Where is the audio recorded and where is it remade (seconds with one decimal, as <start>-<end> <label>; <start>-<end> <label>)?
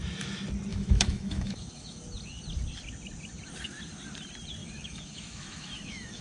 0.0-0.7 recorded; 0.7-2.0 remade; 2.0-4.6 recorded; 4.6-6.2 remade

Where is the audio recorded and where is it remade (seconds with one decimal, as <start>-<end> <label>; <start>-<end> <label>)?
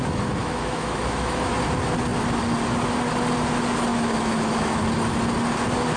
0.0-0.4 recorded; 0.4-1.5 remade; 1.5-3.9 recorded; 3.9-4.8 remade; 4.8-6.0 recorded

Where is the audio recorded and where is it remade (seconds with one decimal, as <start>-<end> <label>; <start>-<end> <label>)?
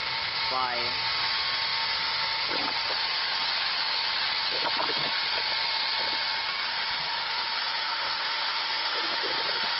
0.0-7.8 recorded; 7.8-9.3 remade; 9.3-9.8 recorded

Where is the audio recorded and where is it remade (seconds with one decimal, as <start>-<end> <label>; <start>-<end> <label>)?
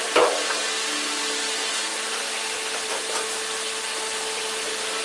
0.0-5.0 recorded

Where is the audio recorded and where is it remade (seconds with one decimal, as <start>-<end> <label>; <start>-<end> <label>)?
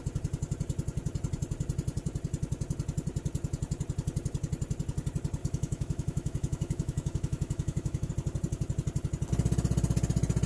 0.0-5.4 recorded; 5.4-8.1 remade; 8.1-10.5 recorded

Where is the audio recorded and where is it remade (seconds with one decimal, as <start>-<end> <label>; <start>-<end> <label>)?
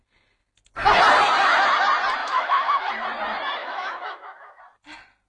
0.0-2.2 recorded; 2.2-2.9 remade; 2.9-3.6 recorded; 3.6-4.6 remade; 4.6-5.3 recorded